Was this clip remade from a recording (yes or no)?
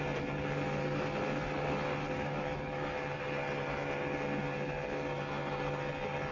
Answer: no